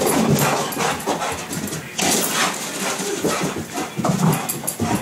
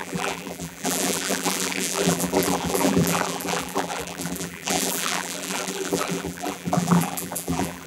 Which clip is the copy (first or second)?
second